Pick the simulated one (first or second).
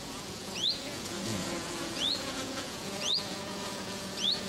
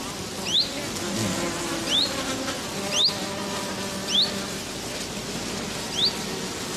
first